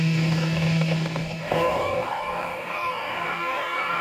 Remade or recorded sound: remade